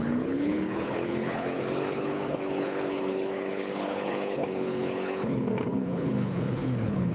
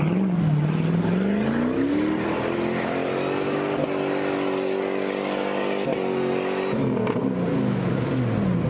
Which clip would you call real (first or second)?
second